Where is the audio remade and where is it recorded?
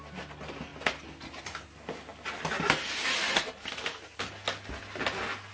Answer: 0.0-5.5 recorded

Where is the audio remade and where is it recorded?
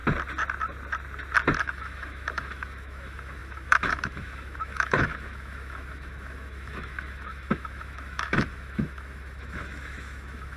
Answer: 0.0-1.6 recorded; 1.6-10.6 remade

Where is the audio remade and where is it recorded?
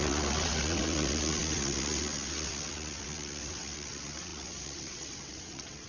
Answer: 0.0-5.9 remade